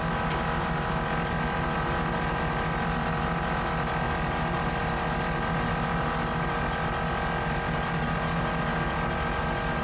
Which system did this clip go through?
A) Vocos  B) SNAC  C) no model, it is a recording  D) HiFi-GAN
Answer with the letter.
C